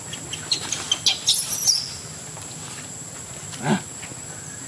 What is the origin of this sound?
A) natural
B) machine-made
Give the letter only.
A